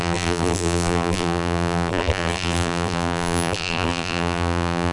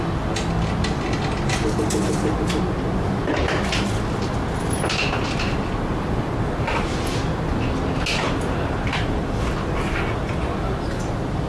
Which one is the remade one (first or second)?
first